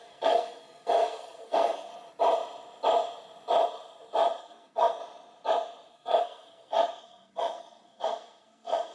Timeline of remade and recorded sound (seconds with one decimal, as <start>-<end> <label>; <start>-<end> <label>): 0.0-1.9 remade; 1.9-4.4 recorded; 4.4-5.0 remade; 5.0-5.9 recorded; 5.9-8.9 remade